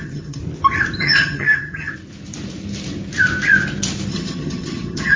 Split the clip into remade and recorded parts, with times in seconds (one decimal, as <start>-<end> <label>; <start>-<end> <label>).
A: 0.0-0.4 remade; 0.4-1.0 recorded; 1.0-1.9 remade; 1.9-4.1 recorded; 4.1-5.2 remade